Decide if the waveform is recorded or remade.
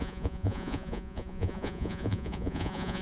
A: remade